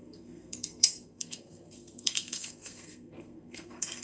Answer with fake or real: fake